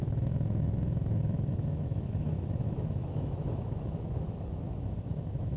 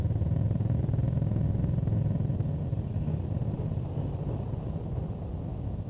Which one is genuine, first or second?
second